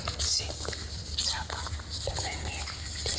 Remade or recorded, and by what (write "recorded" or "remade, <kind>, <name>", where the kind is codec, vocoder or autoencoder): recorded